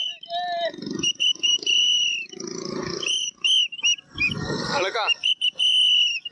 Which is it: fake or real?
real